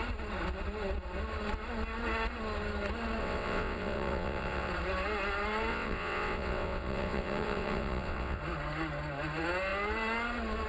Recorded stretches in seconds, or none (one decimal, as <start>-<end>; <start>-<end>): 0.0-3.2; 4.7-5.7; 8.4-10.7